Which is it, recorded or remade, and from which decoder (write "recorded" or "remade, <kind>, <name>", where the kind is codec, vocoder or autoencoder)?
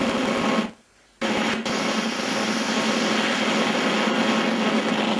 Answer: recorded